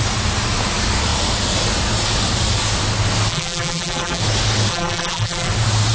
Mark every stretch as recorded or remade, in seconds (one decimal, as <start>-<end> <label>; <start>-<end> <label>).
0.0-3.3 recorded; 3.3-4.2 remade; 4.2-4.7 recorded; 4.7-5.5 remade; 5.5-5.9 recorded